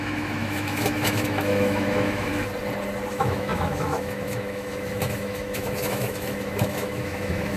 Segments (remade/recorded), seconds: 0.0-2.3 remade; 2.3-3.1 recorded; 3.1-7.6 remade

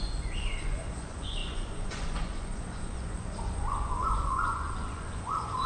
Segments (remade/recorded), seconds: 0.0-5.7 remade